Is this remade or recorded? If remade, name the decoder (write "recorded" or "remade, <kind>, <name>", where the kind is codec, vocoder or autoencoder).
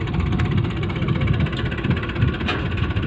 recorded